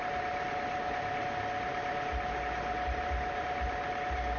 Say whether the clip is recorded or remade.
recorded